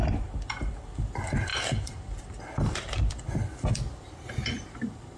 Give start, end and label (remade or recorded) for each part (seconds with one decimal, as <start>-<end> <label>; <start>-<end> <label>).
0.0-5.2 remade